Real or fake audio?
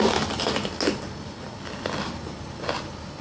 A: real